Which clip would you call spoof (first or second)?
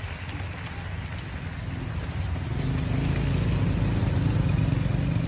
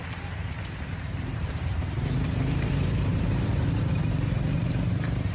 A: second